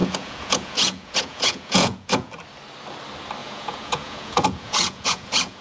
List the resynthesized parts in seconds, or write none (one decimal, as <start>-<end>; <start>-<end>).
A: 0.0-2.3; 3.4-5.6

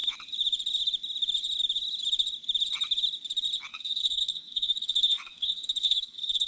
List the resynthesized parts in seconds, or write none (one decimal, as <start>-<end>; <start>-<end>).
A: 3.7-6.5

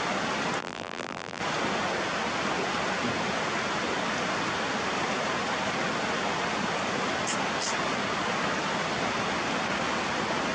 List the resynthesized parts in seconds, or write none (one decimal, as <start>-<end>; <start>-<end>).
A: 0.6-1.4

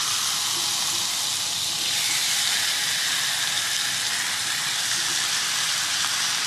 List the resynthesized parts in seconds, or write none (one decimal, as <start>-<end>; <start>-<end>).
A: none

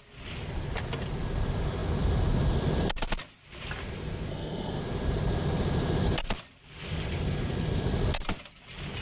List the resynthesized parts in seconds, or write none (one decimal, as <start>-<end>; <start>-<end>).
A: 4.3-4.8

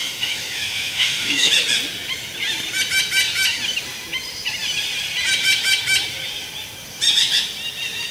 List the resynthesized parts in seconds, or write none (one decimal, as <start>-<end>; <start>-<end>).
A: 0.0-1.5

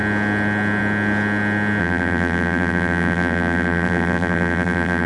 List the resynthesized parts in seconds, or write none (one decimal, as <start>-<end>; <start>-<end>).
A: 1.8-5.1

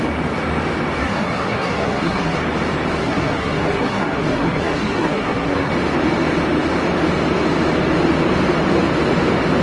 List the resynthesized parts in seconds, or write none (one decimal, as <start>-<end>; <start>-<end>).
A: 1.0-2.4; 3.0-5.7